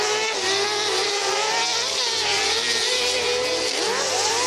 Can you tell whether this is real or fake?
real